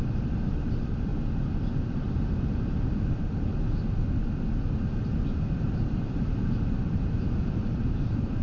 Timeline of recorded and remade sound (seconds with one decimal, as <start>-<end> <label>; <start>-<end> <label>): 0.0-1.1 remade; 1.1-5.6 recorded; 5.6-8.4 remade